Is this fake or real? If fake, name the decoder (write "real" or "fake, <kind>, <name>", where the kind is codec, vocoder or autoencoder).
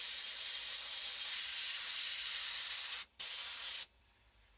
fake, vocoder, BigVGAN v2